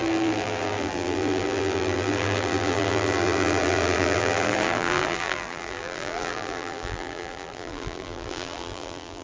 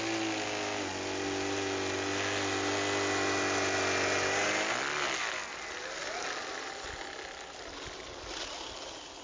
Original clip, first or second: second